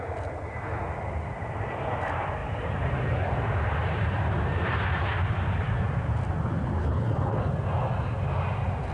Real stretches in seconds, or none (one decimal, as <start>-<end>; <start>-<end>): 0.0-6.8; 7.4-8.9